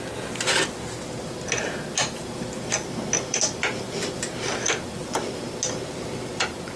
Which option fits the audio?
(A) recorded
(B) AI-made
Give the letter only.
A